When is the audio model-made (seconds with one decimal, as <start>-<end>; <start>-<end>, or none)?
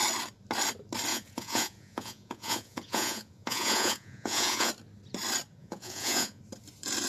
1.1-4.7; 5.6-6.4